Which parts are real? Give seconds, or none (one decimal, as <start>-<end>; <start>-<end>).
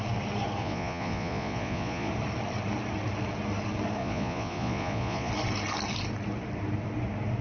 0.0-0.6; 2.1-4.0; 5.3-7.4